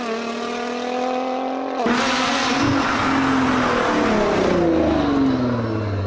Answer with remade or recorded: recorded